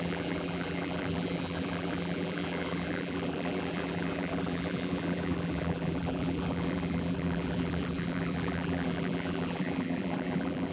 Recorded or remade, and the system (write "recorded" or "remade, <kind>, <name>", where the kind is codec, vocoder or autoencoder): remade, vocoder, BigVGAN v2